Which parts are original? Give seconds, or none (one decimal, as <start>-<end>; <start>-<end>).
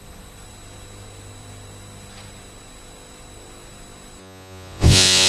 0.0-4.2